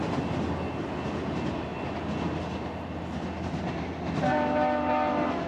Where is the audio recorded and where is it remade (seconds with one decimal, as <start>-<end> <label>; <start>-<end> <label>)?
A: 0.0-5.5 recorded